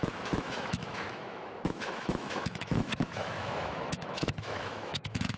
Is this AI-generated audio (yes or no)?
yes